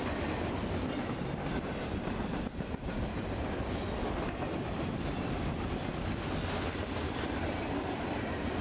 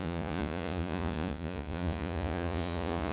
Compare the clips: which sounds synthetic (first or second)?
second